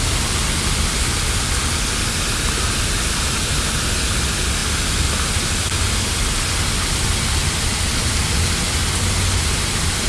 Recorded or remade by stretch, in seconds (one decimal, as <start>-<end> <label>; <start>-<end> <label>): 0.0-10.1 recorded